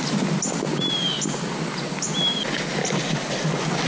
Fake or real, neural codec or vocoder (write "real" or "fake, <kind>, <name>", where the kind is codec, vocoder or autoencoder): real